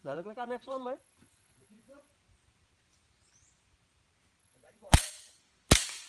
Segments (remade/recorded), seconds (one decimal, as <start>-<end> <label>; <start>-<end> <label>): 0.0-2.1 remade; 2.1-4.4 recorded; 4.4-5.1 remade; 5.1-6.1 recorded